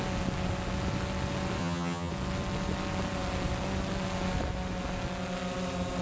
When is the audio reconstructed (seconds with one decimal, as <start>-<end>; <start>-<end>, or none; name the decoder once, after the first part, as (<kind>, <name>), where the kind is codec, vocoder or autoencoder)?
1.6-2.1 (vocoder, HiFi-GAN)